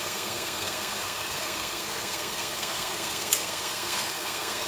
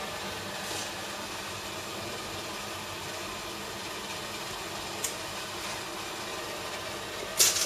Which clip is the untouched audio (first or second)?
second